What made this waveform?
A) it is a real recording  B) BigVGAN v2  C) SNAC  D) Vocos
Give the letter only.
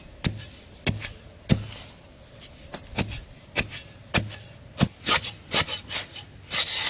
A